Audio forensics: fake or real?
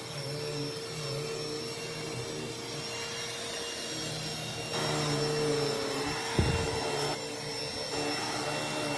real